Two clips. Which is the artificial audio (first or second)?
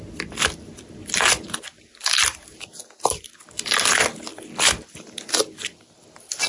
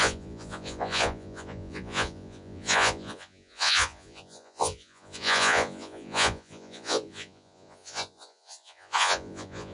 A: second